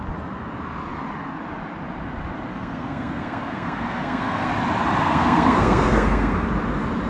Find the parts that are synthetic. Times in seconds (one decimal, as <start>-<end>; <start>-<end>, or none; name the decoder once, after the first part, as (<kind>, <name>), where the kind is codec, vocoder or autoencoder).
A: 2.5-4.5 (codec, SNAC); 5.0-6.5